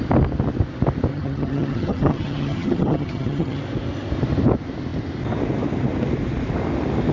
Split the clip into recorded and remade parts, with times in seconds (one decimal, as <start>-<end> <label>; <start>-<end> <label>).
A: 0.0-1.1 recorded; 1.1-3.6 remade; 3.6-7.1 recorded